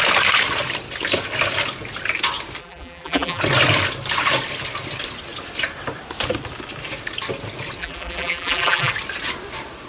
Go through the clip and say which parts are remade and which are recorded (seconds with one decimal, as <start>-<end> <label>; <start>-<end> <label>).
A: 0.0-2.6 recorded; 2.6-3.4 remade; 3.4-7.8 recorded; 7.8-8.9 remade; 8.9-9.9 recorded